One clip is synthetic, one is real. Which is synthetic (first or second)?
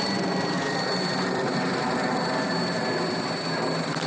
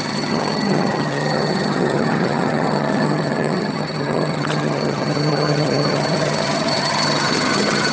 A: second